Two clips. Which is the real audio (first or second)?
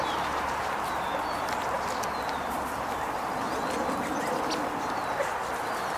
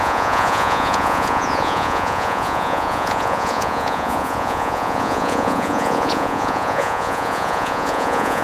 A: first